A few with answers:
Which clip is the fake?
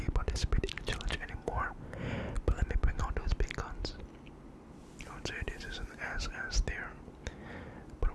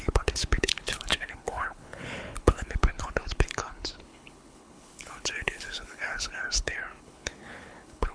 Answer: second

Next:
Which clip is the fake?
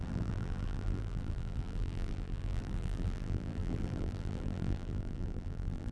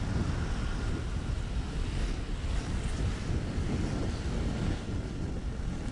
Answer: first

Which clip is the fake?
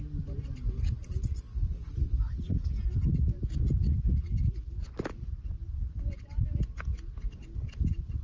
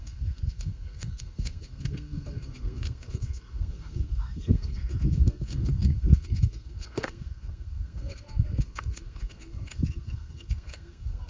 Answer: second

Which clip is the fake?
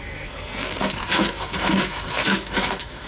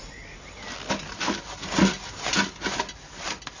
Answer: first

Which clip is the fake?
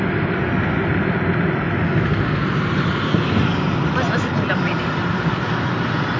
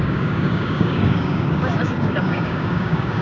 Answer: second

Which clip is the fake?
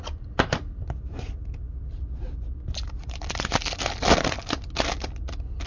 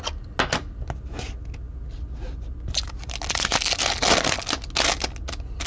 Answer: first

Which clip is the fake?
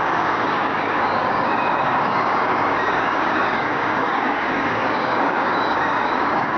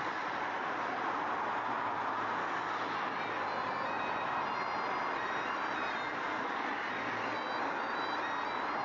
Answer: first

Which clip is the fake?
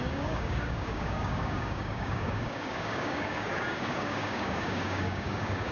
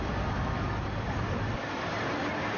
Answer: first